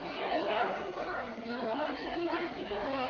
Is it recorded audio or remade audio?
remade